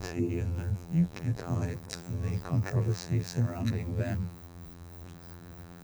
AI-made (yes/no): yes